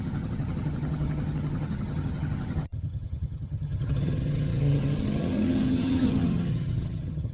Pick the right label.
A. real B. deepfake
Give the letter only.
B